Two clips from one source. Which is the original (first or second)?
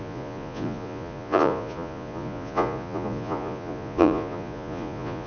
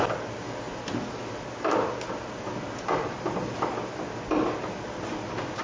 second